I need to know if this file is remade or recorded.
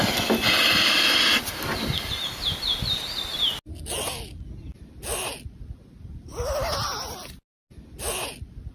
recorded